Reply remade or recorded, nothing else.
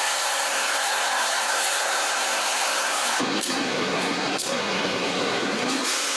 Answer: remade